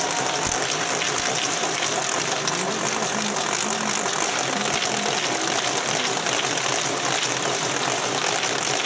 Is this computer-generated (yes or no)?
no